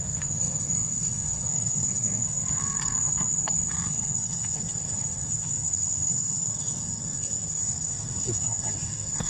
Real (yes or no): no